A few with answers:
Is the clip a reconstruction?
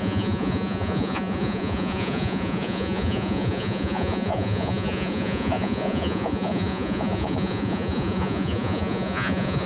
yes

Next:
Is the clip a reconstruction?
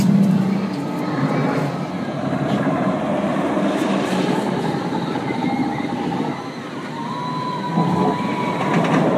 no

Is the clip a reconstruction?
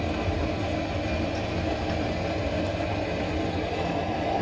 no